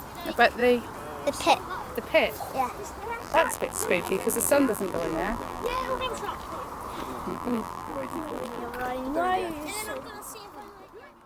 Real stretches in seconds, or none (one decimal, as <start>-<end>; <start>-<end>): 0.0-3.2; 6.0-7.3; 8.6-11.3